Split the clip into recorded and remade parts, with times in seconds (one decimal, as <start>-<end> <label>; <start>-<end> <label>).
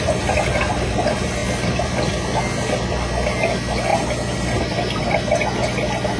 0.0-6.2 recorded